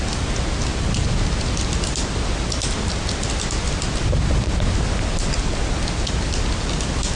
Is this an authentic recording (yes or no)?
yes